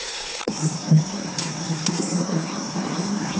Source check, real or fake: fake